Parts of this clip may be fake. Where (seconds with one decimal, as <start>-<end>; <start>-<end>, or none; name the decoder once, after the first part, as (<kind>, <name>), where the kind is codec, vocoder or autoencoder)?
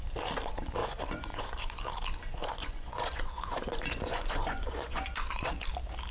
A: 0.8-1.8 (vocoder, Vocos); 2.4-5.5